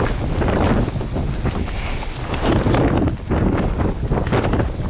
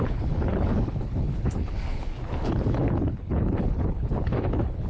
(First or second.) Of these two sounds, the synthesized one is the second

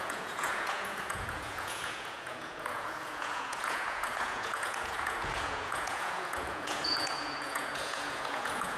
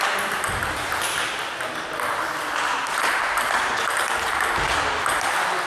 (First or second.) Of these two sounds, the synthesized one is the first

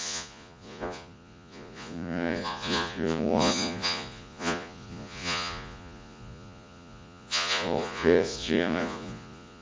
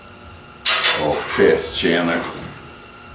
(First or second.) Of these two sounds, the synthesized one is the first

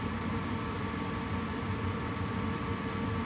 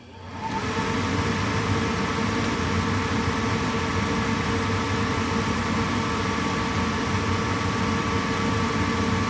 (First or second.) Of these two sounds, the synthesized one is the first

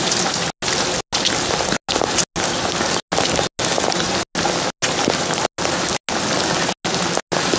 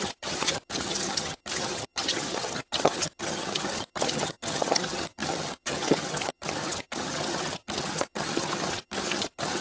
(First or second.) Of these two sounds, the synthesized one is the second